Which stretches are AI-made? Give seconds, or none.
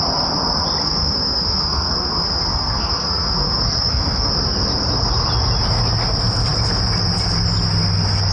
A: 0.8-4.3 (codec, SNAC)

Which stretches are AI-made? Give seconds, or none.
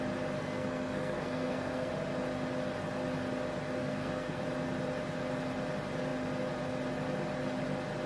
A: 0.4-1.9 (codec, SNAC); 3.8-4.4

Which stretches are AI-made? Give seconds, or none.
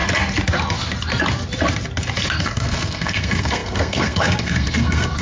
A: 2.4-5.2 (codec, SNAC)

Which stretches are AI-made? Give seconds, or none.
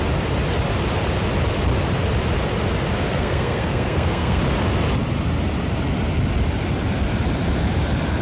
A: 3.0-4.4 (codec, SNAC)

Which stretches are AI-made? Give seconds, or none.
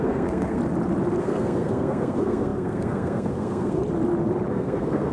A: 0.0-0.6 (codec, SNAC); 1.2-3.8; 4.5-5.1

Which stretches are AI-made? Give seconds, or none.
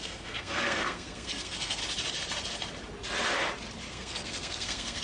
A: 0.0-1.8 (codec, SNAC); 3.9-5.0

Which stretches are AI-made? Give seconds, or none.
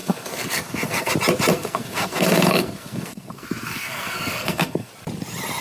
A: 0.0-1.1 (codec, SNAC); 1.5-4.9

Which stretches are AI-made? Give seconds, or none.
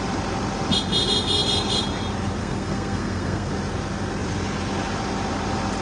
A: 2.4-3.5 (codec, SNAC)